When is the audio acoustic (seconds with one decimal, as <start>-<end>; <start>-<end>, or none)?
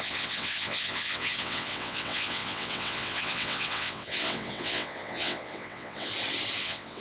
6.1-6.6